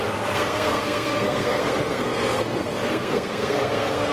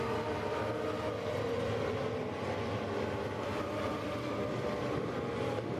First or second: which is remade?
first